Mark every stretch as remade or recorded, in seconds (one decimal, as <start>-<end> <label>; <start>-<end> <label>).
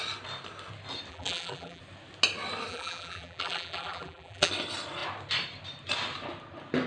0.0-1.1 recorded; 1.1-1.8 remade; 1.8-2.7 recorded; 2.7-4.5 remade; 4.5-6.9 recorded